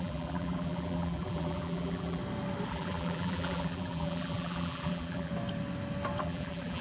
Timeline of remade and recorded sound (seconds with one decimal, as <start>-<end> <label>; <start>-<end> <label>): 0.0-2.2 remade; 2.2-2.7 recorded; 2.7-5.3 remade; 5.3-6.2 recorded; 6.2-6.8 remade